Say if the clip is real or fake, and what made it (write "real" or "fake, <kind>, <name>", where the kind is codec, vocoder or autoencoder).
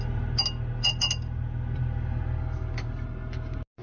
real